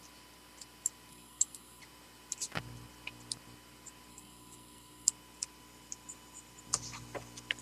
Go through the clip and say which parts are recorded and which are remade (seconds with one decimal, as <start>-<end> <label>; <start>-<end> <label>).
0.0-1.1 recorded; 1.1-1.8 remade; 1.8-4.1 recorded; 4.1-5.1 remade; 5.1-7.6 recorded

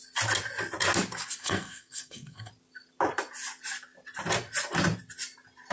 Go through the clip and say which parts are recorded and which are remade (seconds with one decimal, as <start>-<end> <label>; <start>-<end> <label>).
0.0-1.4 recorded; 1.4-2.5 remade; 2.5-5.7 recorded